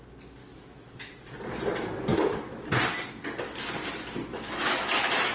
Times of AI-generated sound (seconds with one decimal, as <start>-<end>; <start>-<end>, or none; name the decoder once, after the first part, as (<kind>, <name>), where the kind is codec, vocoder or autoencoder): 0.4-1.1 (autoencoder, DAC-VAE); 2.1-2.7; 4.3-5.3